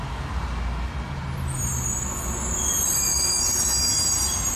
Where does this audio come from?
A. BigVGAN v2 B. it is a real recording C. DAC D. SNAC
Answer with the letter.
B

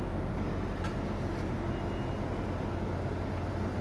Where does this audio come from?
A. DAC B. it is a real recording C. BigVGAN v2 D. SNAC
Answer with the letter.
B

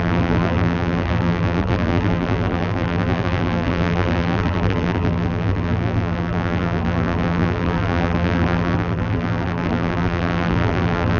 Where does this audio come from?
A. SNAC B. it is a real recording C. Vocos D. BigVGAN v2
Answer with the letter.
D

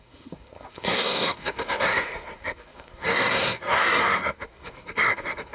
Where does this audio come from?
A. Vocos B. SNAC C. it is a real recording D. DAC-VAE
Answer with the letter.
B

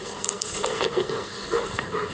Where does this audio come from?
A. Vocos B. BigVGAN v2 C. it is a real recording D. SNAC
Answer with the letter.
D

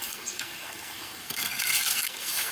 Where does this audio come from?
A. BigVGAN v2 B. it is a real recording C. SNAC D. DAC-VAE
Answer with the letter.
C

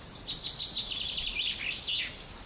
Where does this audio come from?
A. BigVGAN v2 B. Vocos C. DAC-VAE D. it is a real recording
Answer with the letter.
D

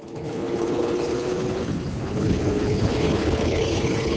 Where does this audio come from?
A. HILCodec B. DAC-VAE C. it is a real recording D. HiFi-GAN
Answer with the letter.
A